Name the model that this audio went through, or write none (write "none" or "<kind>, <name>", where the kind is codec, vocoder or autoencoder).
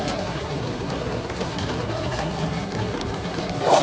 codec, SNAC